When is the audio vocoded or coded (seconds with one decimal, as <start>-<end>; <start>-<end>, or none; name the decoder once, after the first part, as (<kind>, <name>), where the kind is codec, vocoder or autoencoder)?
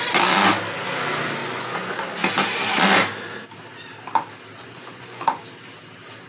1.4-1.9 (vocoder, Vocos); 4.6-5.4